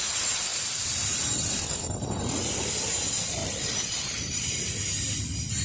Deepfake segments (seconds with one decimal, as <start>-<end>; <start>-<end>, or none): 0.5-2.2; 3.4-4.7